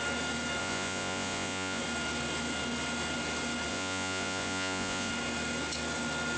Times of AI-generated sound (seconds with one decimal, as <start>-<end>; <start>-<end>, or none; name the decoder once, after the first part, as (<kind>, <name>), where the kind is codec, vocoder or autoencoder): 0.6-1.8 (vocoder, Vocos); 3.7-5.1